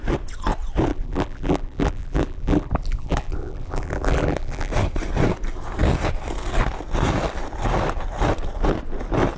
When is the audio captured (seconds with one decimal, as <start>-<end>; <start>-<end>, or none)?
0.0-0.9; 4.7-9.4